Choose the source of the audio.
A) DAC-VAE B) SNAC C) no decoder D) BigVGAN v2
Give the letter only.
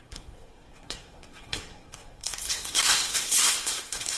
B